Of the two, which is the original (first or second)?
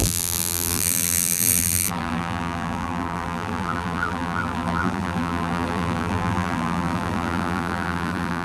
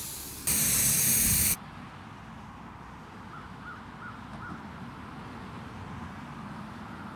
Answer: second